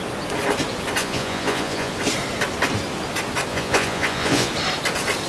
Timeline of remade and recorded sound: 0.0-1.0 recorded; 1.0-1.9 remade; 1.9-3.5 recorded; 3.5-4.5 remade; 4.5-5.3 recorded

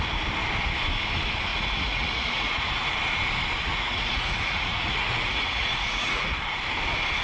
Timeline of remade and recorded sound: 0.0-1.5 recorded; 1.5-2.8 remade; 2.8-3.7 recorded; 3.7-6.3 remade; 6.3-7.2 recorded

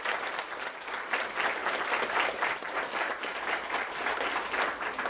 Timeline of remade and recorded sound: 0.0-5.1 recorded

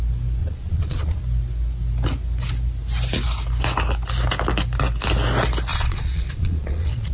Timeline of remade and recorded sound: 0.0-0.4 recorded; 0.4-1.2 remade; 1.2-5.7 recorded; 5.7-7.1 remade

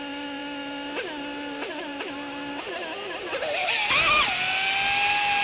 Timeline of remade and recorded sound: 0.0-5.4 recorded

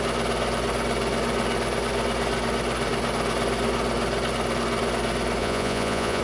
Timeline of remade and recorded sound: 0.0-5.4 recorded; 5.4-6.2 remade

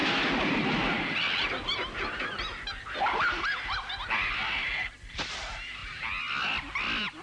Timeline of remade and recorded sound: 0.0-7.2 recorded